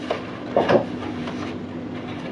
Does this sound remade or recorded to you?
recorded